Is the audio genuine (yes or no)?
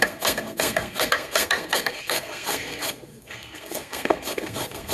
no